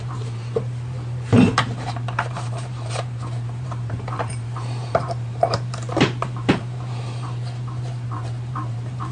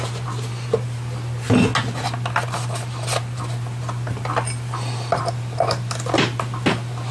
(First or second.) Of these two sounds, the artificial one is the first